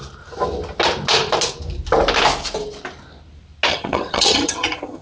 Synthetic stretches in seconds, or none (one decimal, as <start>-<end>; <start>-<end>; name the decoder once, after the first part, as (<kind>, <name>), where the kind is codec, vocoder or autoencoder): 3.7-5.0 (vocoder, HiFi-GAN)